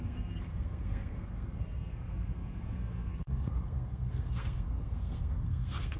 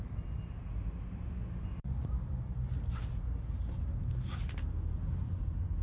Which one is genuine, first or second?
second